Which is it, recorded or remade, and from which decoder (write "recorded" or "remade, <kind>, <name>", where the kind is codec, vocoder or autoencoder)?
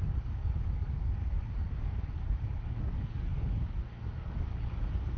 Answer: remade, codec, DAC